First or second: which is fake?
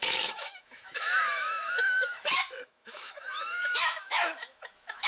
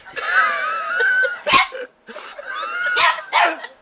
first